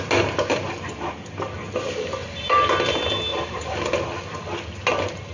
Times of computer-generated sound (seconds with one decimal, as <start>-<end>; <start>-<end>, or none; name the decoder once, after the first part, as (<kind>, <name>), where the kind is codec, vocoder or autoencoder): 2.2-2.7 (vocoder, BigVGAN v2); 3.3-3.9